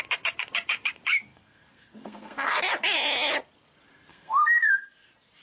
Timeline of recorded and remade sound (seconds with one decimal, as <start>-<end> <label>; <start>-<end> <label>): 0.0-1.3 recorded; 1.3-2.6 remade; 2.6-4.1 recorded; 4.1-4.8 remade; 4.8-5.4 recorded